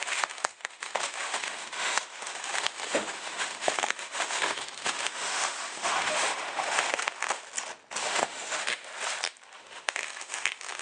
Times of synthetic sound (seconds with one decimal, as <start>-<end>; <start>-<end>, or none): 0.0-7.4; 8.0-8.9; 9.6-10.8